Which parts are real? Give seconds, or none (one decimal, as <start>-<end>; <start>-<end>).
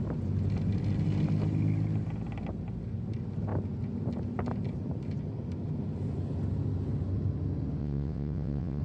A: 0.0-7.8